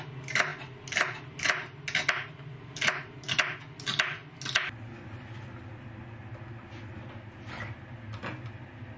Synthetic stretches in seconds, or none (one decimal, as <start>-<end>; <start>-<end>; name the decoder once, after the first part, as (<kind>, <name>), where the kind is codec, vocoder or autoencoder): none